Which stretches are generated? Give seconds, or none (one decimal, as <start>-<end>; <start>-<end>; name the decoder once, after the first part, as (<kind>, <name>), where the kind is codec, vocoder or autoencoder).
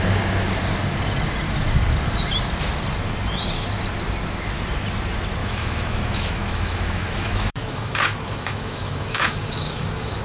5.4-10.2 (autoencoder, DAC-VAE)